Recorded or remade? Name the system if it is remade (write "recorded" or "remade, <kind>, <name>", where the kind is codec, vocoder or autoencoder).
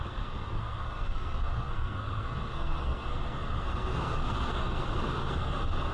remade, codec, SNAC